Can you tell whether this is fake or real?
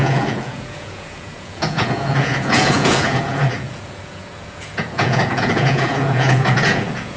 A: fake